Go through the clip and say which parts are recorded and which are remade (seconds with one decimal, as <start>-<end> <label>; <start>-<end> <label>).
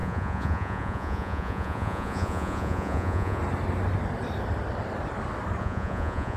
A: 0.0-3.4 remade; 3.4-5.6 recorded; 5.6-6.4 remade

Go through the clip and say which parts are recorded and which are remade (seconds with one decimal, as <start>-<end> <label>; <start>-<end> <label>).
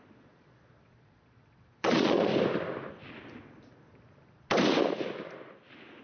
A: 0.0-2.3 remade; 2.3-6.0 recorded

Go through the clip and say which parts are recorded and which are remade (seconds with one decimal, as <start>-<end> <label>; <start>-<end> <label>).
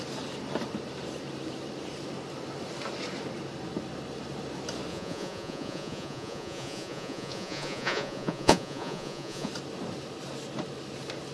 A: 0.0-4.9 recorded; 4.9-9.5 remade; 9.5-11.3 recorded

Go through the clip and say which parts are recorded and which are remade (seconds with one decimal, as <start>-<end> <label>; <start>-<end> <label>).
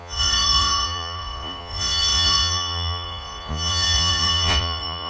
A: 0.0-5.1 remade